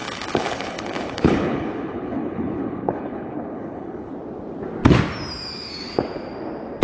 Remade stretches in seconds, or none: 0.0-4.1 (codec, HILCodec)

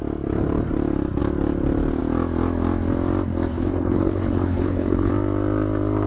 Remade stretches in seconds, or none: 3.5-5.1 (codec, HILCodec)

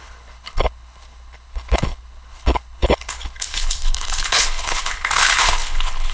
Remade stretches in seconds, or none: 0.0-6.1 (codec, HILCodec)

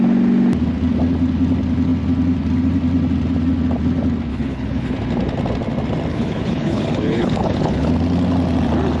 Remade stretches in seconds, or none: 4.3-5.0 (codec, HILCodec); 6.1-7.9